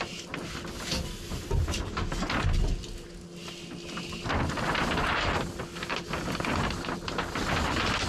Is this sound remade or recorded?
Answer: recorded